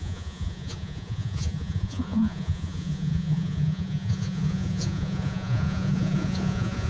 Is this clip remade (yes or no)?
yes